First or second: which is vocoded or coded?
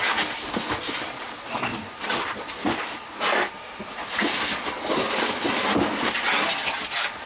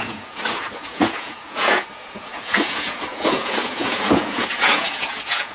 second